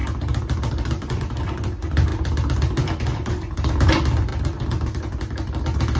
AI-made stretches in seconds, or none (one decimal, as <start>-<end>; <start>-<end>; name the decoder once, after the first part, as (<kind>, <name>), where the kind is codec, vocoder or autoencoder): none